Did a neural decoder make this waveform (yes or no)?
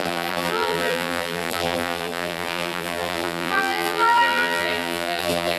yes